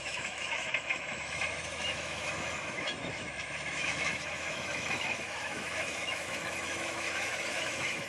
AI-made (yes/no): yes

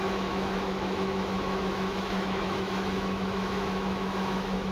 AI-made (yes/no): yes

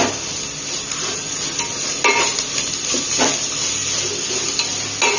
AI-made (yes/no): no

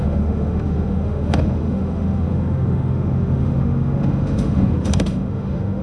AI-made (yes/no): yes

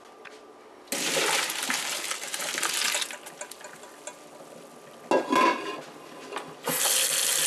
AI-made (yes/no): no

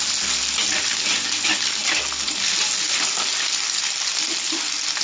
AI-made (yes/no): no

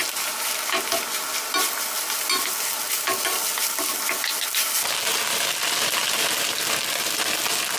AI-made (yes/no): no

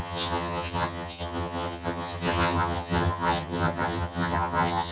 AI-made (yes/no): yes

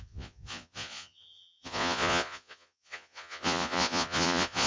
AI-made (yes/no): yes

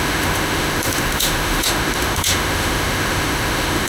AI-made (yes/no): yes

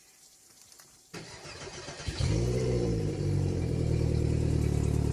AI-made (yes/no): yes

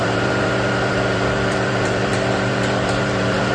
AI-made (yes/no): yes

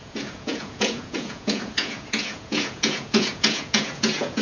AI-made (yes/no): yes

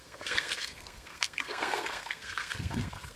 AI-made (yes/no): yes